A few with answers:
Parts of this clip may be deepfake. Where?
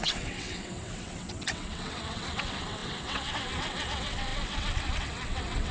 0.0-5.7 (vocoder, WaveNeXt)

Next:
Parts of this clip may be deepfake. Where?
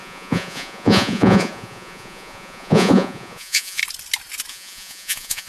0.0-3.8 (vocoder, Vocos); 4.5-5.5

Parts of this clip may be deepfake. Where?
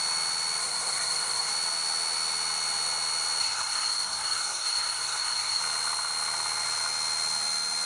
0.6-1.5 (codec, SNAC); 3.4-5.6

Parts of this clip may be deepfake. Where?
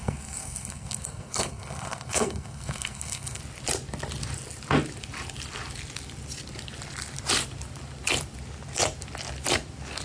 0.0-3.4 (codec, SNAC)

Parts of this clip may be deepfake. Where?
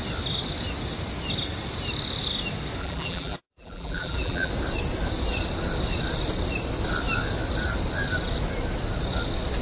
2.8-4.5 (vocoder, BigVGAN v2)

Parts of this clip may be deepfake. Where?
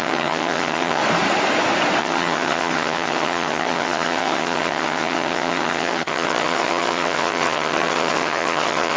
0.0-1.0 (vocoder, HiFi-GAN); 2.0-9.0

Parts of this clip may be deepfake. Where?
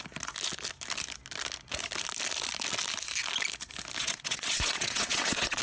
4.0-5.6 (vocoder, WaveNeXt)